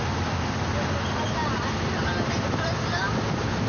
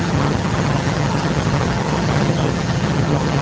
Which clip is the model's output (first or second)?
second